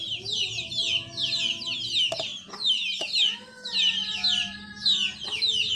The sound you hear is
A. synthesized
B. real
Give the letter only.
B